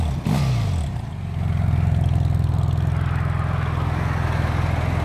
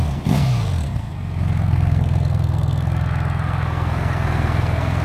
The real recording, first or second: first